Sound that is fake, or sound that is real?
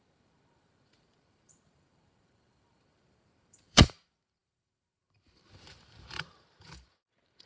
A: fake